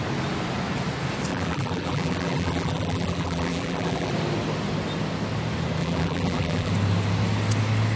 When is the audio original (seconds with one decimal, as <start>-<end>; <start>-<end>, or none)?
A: 0.0-1.3; 4.1-5.8; 6.7-8.0